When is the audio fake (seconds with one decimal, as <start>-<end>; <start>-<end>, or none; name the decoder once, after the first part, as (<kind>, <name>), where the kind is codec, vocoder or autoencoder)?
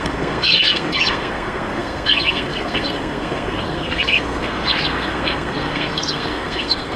0.0-7.0 (codec, SNAC)